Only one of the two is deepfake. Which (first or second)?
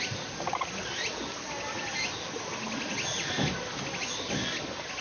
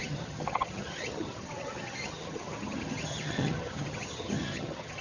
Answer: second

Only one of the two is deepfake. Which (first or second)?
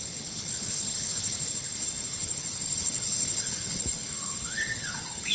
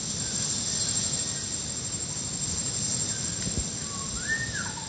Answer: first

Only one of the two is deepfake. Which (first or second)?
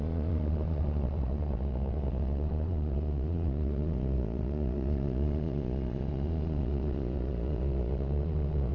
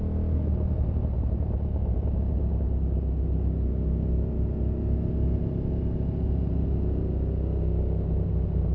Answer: first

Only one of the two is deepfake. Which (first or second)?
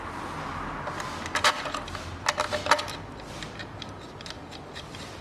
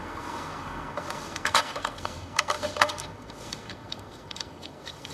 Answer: second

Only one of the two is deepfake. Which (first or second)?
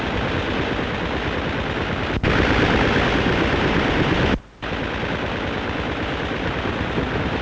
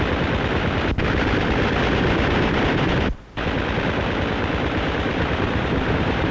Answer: second